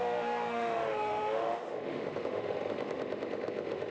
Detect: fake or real fake